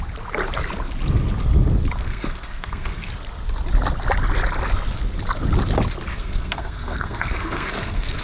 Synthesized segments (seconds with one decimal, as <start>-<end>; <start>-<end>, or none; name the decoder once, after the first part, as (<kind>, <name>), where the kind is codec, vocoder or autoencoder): 2.0-3.1 (codec, SNAC); 6.1-8.2